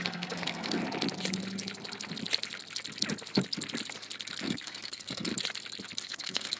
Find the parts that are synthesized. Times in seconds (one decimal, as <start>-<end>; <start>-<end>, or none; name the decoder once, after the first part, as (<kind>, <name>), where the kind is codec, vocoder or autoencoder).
0.0-0.8 (codec, SNAC); 4.4-5.3; 6.0-6.6